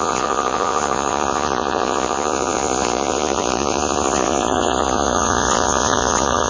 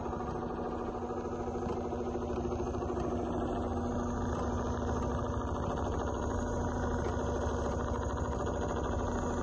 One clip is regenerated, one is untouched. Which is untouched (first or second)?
second